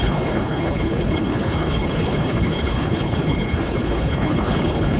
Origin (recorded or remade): remade